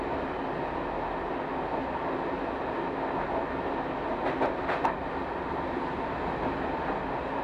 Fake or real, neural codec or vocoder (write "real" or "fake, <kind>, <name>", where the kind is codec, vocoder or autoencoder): real